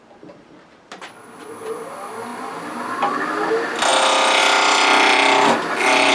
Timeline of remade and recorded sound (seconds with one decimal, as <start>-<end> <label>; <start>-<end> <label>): 0.0-6.1 recorded